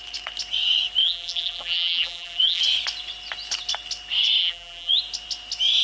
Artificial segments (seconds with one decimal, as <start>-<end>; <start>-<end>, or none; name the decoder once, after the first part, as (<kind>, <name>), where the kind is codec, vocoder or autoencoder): 1.0-2.6 (vocoder, BigVGAN v2); 4.4-4.9